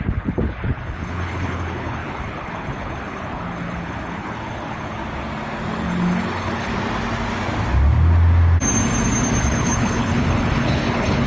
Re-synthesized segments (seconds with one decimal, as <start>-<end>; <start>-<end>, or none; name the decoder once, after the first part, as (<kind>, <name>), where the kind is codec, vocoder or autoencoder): 0.0-5.0 (codec, HILCodec); 5.7-6.7; 9.4-11.3